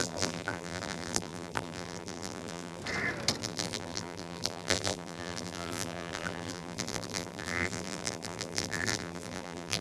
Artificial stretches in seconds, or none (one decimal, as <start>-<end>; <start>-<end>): 0.0-2.8; 3.4-9.8